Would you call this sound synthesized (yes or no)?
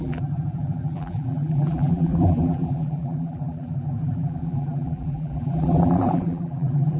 yes